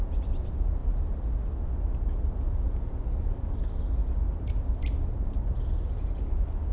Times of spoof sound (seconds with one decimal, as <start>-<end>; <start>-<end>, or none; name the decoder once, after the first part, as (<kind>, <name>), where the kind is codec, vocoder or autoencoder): none

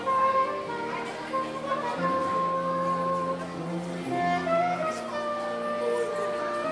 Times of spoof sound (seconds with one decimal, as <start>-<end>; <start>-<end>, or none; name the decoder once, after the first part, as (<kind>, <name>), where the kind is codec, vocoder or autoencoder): none

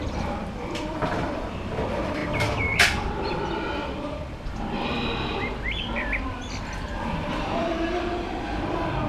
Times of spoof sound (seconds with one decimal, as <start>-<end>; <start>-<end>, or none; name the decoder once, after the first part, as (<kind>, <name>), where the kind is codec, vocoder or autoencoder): 0.0-9.1 (vocoder, BigVGAN v2)

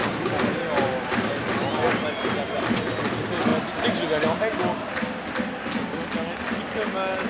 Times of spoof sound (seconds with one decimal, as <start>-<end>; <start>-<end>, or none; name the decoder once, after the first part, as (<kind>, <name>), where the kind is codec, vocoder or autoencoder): none

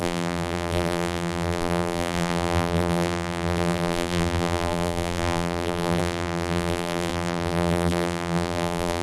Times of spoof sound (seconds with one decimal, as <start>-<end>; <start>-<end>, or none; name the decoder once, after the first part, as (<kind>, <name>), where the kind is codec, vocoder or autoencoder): 0.0-9.0 (vocoder, BigVGAN v2)

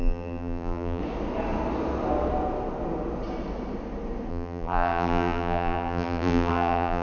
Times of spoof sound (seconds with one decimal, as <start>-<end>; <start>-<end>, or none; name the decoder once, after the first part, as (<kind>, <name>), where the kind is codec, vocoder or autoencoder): 0.0-1.0 (vocoder, BigVGAN v2); 4.3-7.0

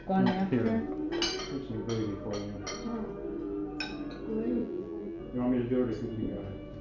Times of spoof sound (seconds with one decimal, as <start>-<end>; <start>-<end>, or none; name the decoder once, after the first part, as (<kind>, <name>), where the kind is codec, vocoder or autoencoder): 4.6-5.2 (vocoder, BigVGAN v2)

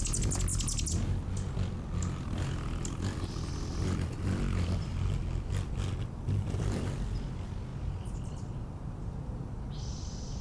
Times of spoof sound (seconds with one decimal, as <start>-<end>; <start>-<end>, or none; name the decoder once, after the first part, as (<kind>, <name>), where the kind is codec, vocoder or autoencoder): none